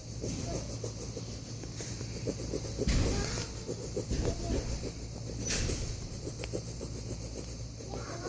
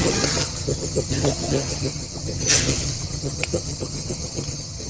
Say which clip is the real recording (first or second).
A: first